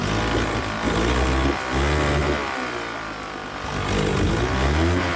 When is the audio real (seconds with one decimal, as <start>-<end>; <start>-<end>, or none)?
0.0-5.2

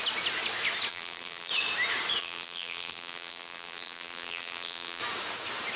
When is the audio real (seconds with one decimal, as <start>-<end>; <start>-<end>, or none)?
0.0-0.9; 1.5-2.2; 5.0-5.8

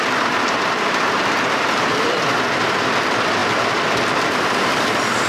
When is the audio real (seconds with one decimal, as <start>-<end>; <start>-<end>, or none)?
none